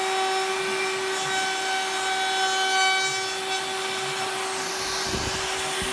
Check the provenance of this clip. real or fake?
real